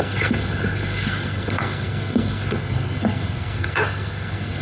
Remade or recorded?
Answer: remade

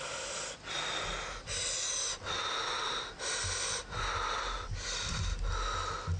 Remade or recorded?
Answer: recorded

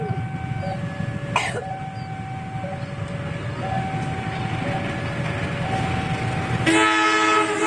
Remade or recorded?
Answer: recorded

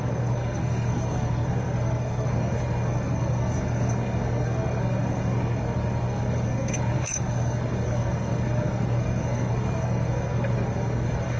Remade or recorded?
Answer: remade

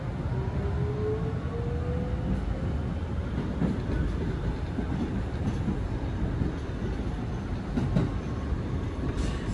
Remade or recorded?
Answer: recorded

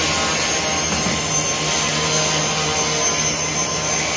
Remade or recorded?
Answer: recorded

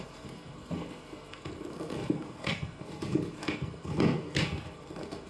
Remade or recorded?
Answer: remade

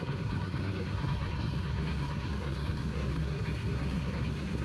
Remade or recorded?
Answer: remade